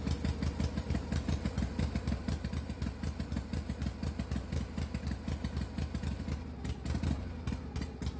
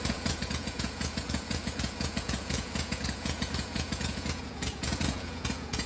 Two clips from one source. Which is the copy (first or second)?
second